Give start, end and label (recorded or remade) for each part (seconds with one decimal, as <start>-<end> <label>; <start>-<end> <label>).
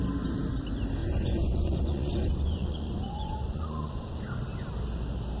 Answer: 0.0-1.0 recorded; 1.0-4.2 remade; 4.2-5.4 recorded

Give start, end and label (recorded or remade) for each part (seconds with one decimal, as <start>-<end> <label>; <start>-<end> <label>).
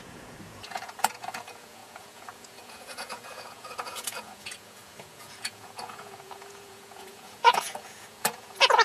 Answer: 0.0-8.8 remade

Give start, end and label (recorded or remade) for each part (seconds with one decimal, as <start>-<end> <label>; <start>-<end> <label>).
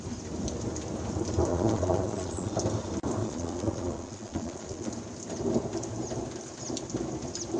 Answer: 0.0-1.5 recorded; 1.5-2.5 remade; 2.5-3.2 recorded; 3.2-4.9 remade; 4.9-7.6 recorded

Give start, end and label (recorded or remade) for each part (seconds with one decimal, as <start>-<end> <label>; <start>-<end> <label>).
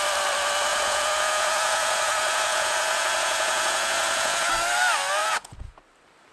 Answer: 0.0-0.7 recorded; 0.7-4.5 remade; 4.5-5.2 recorded; 5.2-5.8 remade; 5.8-6.3 recorded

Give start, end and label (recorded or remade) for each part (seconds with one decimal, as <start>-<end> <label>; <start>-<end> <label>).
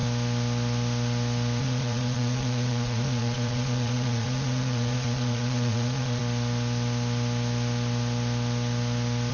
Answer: 0.0-1.6 recorded; 1.6-6.2 remade; 6.2-9.3 recorded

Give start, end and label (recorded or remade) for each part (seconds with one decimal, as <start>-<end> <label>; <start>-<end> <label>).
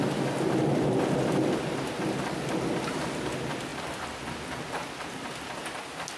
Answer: 0.0-6.2 recorded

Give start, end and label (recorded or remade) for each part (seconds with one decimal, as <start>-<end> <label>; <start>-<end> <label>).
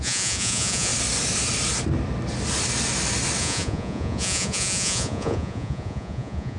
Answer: 0.0-0.9 remade; 0.9-3.4 recorded; 3.4-6.6 remade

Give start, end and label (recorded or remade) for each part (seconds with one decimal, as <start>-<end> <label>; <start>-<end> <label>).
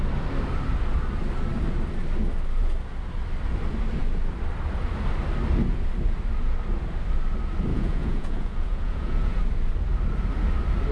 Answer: 0.0-7.7 recorded; 7.7-9.4 remade; 9.4-10.9 recorded